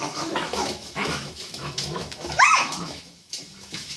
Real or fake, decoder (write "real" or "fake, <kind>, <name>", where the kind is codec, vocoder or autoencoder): fake, autoencoder, DAC-VAE